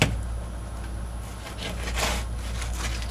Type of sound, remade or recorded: recorded